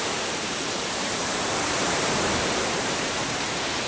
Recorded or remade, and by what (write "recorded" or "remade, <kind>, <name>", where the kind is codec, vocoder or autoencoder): remade, vocoder, BigVGAN v2